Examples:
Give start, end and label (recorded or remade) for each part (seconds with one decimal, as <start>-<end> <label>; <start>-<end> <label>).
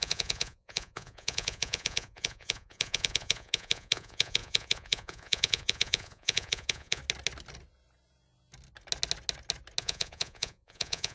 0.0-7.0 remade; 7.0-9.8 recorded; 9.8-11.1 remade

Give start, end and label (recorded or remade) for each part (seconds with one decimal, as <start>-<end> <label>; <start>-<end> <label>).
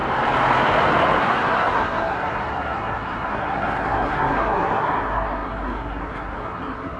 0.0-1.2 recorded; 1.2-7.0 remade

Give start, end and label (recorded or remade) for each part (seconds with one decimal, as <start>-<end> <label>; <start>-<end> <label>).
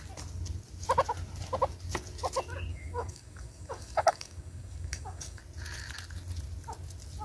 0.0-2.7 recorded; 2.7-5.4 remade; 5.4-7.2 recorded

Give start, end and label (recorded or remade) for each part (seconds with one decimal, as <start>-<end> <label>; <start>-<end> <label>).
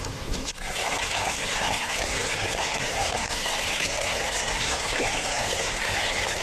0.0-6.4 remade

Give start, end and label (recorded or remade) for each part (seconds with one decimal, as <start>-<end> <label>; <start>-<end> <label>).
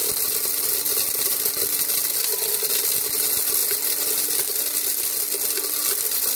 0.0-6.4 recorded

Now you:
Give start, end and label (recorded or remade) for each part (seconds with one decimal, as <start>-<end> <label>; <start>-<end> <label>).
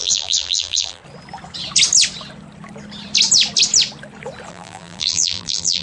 0.0-1.0 remade; 1.0-4.5 recorded; 4.5-5.8 remade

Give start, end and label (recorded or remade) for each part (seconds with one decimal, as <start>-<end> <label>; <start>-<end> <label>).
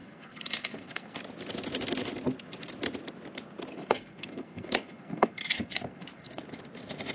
0.0-1.2 remade; 1.2-3.7 recorded; 3.7-6.4 remade; 6.4-7.1 recorded